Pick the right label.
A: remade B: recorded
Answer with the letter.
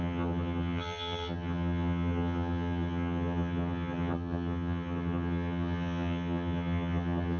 A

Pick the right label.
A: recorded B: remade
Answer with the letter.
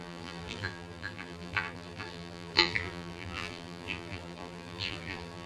B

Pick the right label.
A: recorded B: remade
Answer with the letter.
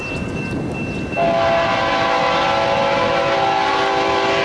A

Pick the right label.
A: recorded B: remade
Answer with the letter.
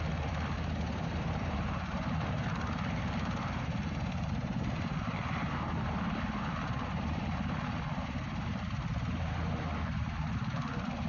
B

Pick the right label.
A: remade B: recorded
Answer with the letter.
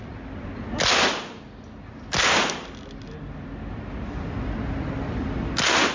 B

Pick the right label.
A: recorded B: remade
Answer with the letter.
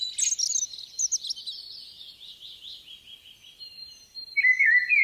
A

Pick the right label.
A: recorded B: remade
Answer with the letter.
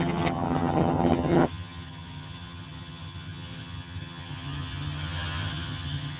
B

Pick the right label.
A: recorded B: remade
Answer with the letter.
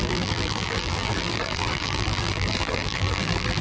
B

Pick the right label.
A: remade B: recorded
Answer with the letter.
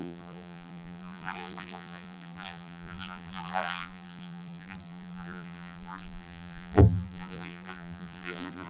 A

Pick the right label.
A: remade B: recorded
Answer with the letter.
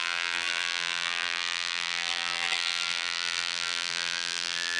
A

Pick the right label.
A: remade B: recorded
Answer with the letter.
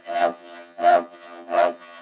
A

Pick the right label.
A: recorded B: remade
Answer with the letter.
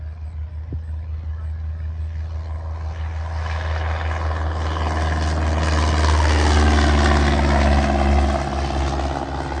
A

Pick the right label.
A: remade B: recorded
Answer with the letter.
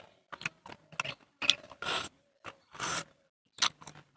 B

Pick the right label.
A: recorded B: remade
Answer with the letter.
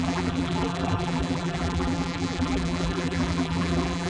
B